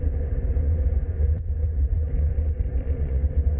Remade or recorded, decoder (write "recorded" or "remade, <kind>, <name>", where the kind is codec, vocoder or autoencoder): remade, vocoder, Vocos